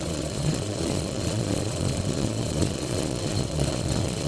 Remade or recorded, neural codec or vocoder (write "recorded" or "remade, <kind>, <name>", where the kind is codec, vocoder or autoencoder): remade, vocoder, Vocos